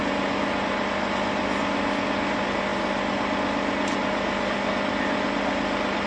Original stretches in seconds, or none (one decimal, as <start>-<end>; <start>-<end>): 0.0-6.1